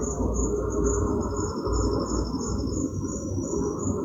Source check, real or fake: real